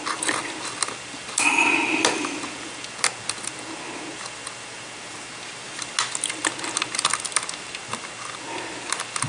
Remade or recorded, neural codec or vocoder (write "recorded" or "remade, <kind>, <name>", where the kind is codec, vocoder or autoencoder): recorded